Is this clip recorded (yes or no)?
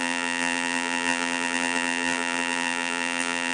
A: no